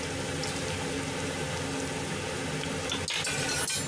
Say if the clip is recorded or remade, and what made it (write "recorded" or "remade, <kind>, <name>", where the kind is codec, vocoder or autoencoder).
recorded